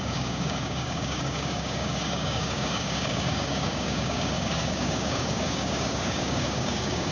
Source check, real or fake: fake